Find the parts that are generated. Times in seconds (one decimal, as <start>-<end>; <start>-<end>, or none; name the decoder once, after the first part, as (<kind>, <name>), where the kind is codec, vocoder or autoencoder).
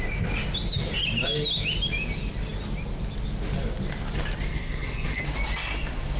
4.5-5.2 (codec, SNAC)